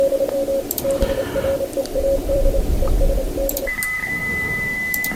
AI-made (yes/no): yes